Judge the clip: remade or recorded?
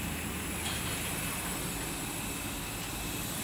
recorded